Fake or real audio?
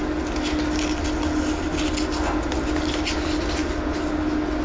real